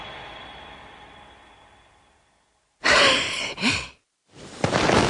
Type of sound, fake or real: real